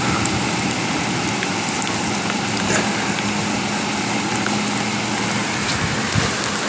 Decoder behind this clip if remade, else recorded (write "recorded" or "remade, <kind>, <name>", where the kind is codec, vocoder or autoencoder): recorded